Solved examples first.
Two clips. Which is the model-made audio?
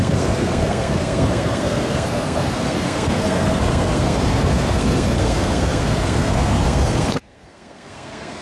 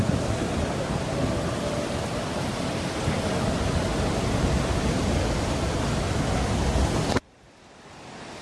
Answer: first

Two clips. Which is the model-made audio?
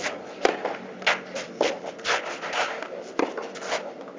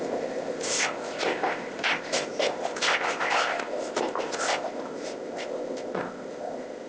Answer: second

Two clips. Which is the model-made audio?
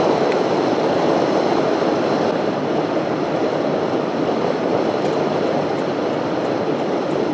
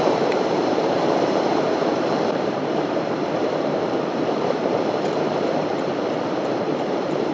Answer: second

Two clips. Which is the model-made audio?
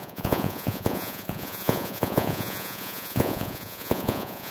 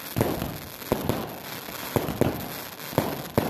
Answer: first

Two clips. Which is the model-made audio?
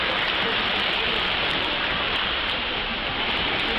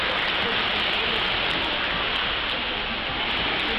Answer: first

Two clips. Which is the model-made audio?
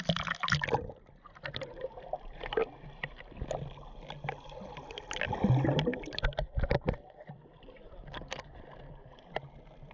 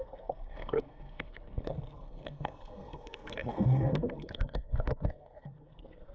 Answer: second